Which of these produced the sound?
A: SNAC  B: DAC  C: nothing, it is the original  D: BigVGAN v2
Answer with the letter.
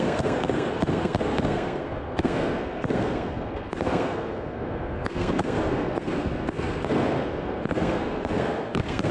A